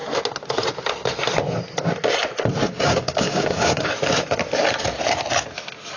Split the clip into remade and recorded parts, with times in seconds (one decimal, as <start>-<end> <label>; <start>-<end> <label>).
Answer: 0.0-2.6 recorded; 2.6-3.9 remade; 3.9-6.0 recorded